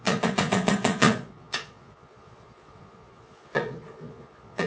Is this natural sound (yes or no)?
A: no